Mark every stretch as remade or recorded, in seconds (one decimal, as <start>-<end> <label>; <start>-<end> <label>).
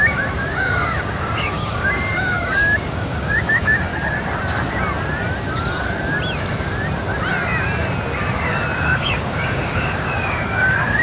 0.0-3.9 remade; 3.9-8.8 recorded; 8.8-11.0 remade